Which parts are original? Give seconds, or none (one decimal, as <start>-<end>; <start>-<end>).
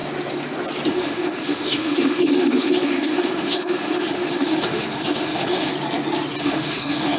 0.0-0.9; 5.7-6.4